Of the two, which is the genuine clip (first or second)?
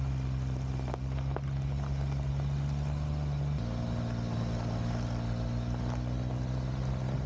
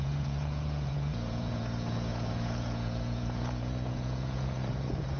first